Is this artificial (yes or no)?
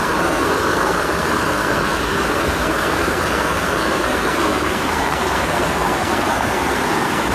yes